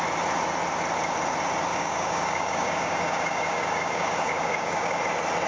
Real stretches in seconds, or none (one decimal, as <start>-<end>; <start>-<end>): 0.0-1.7; 5.0-5.5

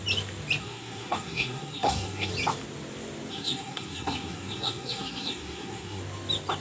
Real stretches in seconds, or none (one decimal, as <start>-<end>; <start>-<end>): 0.0-0.6; 2.3-3.3; 6.0-6.6

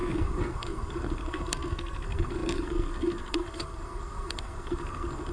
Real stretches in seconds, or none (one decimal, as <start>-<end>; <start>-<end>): none

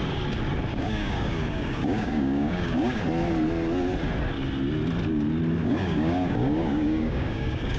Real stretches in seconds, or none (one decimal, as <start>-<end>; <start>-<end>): 0.0-0.7; 3.0-5.6

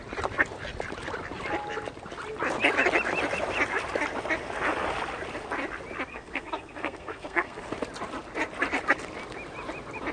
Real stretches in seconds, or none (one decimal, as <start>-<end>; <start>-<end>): 0.0-6.1; 7.6-10.1

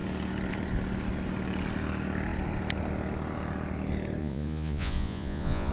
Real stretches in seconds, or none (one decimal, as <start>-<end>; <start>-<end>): 0.0-4.2

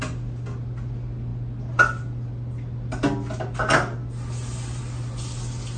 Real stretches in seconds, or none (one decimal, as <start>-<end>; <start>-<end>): 0.0-5.8

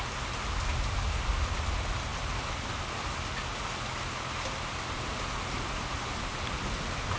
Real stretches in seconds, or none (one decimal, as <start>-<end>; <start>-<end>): 0.0-7.2